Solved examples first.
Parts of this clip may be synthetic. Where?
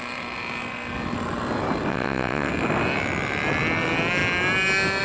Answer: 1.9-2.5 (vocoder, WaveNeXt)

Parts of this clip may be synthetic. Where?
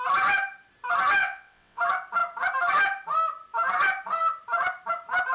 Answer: 1.2-1.8 (vocoder, WaveNeXt)